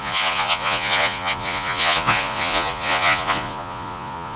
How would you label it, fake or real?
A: fake